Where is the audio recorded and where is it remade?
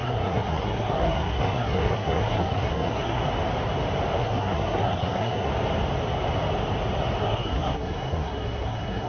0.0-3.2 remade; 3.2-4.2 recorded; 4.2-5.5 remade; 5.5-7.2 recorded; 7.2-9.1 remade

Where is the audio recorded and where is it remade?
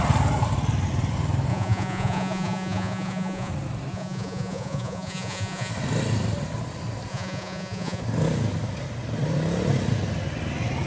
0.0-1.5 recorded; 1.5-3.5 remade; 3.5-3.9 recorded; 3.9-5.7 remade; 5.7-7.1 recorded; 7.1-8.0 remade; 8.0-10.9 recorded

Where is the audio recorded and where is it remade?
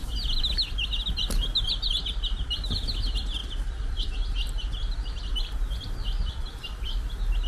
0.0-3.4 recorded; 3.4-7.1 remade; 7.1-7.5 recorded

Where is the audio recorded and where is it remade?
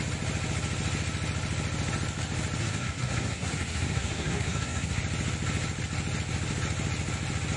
0.0-2.6 recorded; 2.6-5.0 remade; 5.0-7.6 recorded